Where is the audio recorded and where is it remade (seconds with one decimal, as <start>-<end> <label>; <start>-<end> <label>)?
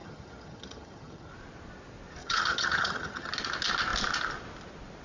0.0-1.3 remade; 1.3-2.2 recorded; 2.2-3.3 remade; 3.3-5.0 recorded